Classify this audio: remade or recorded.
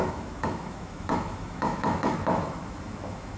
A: remade